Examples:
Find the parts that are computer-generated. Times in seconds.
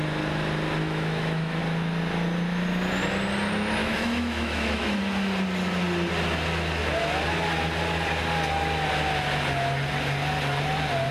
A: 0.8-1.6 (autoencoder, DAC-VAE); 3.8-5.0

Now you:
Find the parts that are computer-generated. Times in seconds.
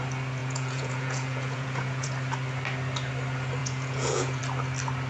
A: 0.4-2.1 (vocoder, Vocos); 3.6-4.4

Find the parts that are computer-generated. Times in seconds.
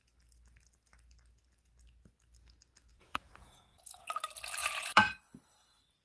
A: 2.9-4.0 (vocoder, Vocos); 4.6-5.2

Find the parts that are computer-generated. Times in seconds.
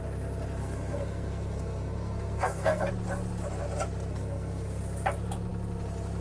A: 0.6-2.9 (codec, SNAC); 4.1-4.8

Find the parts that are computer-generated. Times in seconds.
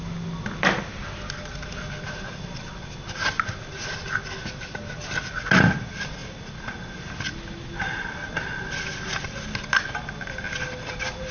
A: none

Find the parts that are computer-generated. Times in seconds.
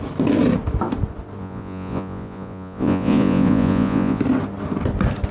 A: 1.4-4.2 (vocoder, Vocos)